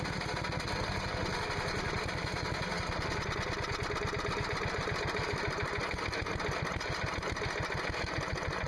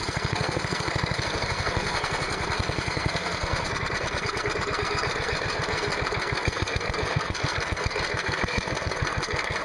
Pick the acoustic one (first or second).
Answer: first